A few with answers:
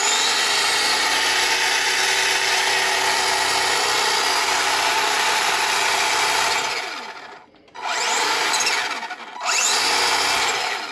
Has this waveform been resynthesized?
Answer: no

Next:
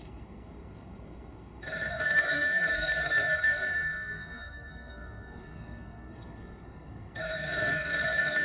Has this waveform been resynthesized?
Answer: yes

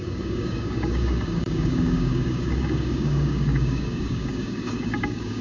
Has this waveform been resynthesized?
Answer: yes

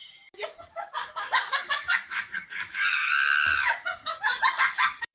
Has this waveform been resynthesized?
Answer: yes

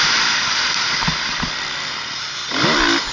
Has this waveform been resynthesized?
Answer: no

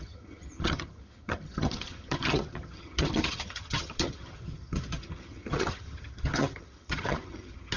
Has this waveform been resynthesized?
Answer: yes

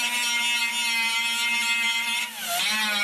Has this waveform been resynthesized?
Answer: no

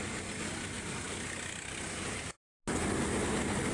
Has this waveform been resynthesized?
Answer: no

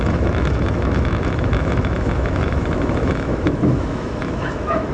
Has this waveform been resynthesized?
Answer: yes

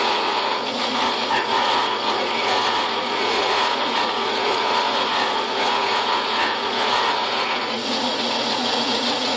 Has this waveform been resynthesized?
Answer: yes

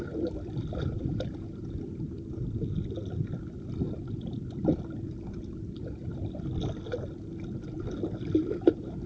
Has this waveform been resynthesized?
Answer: no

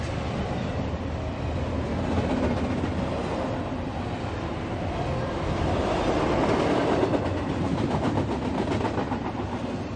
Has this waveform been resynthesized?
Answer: no